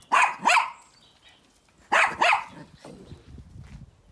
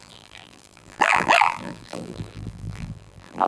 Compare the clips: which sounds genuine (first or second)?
first